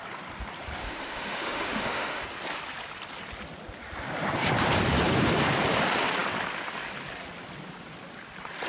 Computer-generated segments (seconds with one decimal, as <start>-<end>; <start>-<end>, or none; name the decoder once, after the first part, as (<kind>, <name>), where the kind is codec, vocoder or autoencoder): 0.8-2.2 (autoencoder, DAC-VAE)